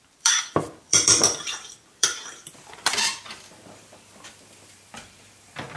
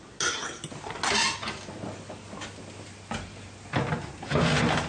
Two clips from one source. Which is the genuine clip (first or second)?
second